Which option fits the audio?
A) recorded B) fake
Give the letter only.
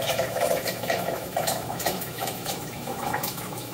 B